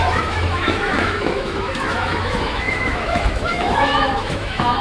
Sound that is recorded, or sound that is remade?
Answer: remade